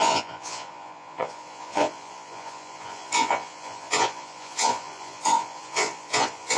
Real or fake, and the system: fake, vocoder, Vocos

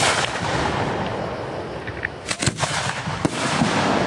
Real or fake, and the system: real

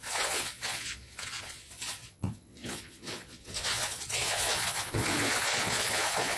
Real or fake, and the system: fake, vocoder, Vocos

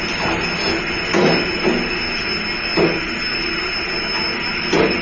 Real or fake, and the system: real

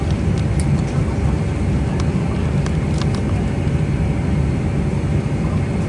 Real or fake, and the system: real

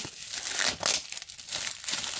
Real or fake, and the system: real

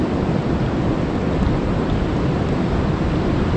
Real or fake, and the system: real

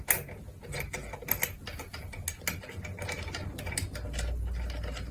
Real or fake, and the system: real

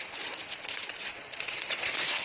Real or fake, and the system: fake, vocoder, Vocos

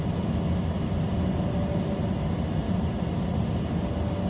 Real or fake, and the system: real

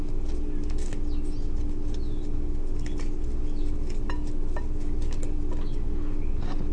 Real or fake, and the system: real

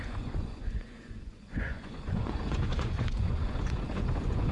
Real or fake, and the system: fake, vocoder, Vocos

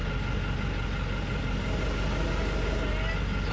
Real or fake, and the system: real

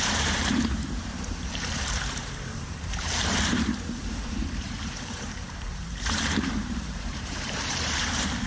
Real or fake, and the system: fake, vocoder, BigVGAN v2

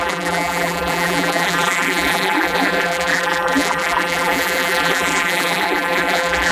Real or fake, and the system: fake, vocoder, BigVGAN v2